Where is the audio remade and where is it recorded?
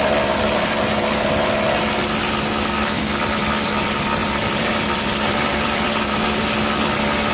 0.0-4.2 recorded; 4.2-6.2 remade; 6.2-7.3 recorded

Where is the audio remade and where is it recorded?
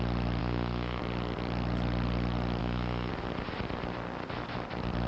0.0-0.4 recorded; 0.4-1.0 remade; 1.0-2.6 recorded; 2.6-3.1 remade; 3.1-5.1 recorded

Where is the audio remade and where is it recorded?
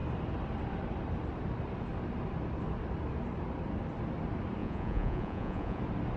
0.0-4.6 recorded; 4.6-5.8 remade; 5.8-6.2 recorded